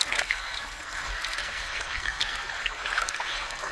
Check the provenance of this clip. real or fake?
fake